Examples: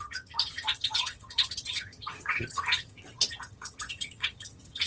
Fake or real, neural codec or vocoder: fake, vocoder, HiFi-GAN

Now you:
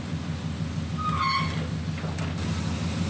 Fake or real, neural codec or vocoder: real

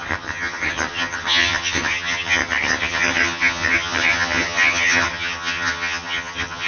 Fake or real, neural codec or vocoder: fake, vocoder, HiFi-GAN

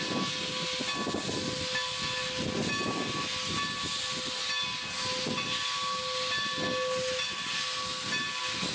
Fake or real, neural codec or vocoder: real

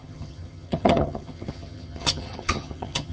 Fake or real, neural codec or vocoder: fake, vocoder, HiFi-GAN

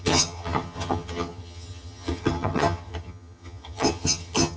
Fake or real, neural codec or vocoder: fake, vocoder, HiFi-GAN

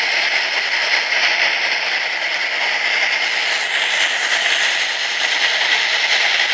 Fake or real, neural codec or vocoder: real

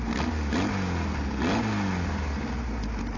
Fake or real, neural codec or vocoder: real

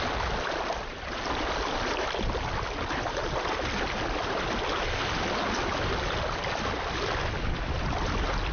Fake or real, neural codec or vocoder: real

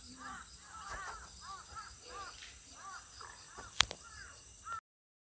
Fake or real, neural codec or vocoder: real